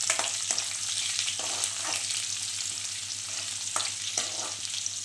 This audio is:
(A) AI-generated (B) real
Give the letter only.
B